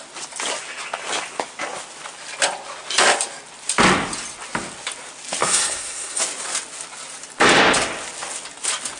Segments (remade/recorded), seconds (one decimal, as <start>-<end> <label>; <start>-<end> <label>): 0.0-5.4 recorded; 5.4-6.2 remade; 6.2-9.0 recorded